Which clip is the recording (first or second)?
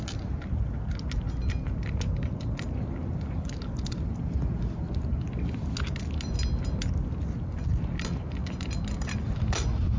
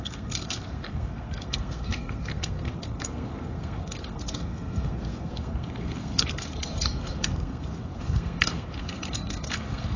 first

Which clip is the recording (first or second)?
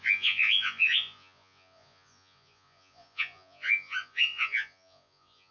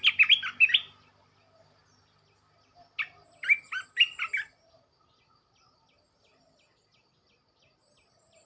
second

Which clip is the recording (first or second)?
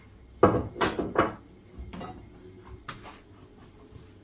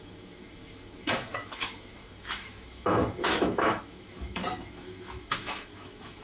first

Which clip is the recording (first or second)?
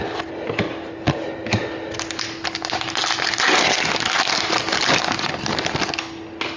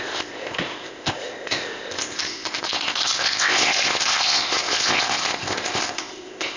first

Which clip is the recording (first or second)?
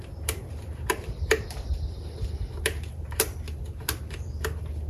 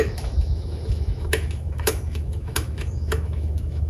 first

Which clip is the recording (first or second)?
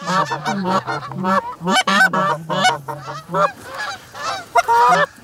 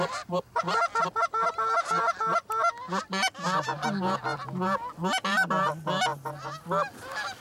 second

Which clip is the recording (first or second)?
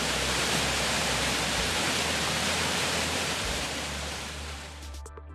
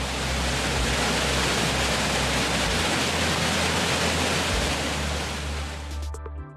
second